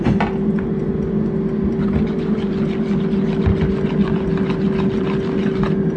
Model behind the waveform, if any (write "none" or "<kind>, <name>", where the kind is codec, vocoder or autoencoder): none